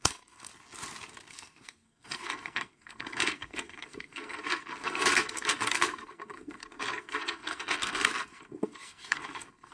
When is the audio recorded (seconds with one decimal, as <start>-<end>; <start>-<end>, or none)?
0.5-1.3